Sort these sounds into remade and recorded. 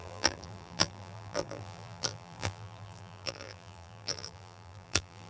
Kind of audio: remade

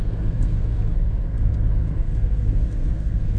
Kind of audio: remade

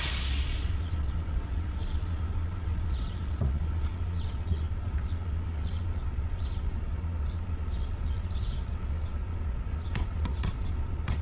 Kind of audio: remade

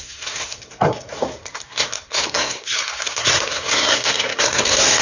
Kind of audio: remade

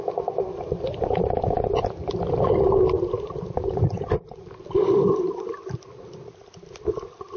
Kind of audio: recorded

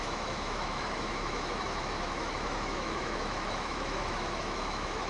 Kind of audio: remade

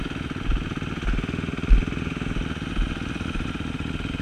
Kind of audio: recorded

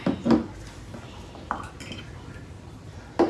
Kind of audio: recorded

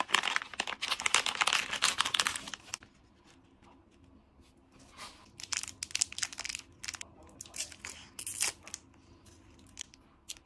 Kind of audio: recorded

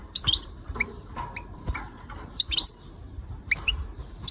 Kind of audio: remade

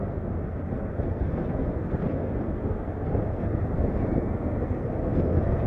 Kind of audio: remade